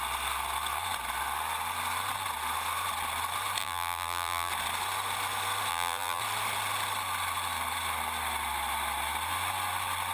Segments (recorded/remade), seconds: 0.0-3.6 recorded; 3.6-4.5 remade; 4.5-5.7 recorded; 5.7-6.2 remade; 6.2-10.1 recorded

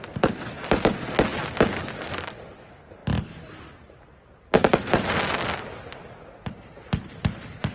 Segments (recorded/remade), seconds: 0.0-7.7 recorded

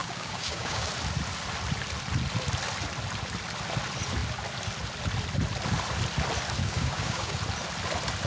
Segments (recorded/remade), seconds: 0.0-0.9 remade; 0.9-6.6 recorded; 6.6-7.4 remade; 7.4-8.3 recorded

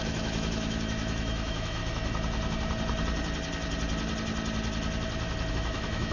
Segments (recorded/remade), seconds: 0.0-1.8 remade; 1.8-5.5 recorded; 5.5-6.1 remade

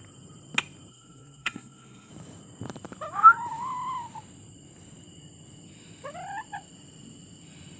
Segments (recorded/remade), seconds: 0.0-0.9 recorded; 0.9-2.1 remade; 2.1-7.8 recorded